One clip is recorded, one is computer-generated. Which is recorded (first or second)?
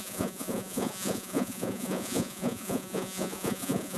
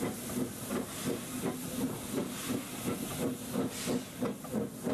second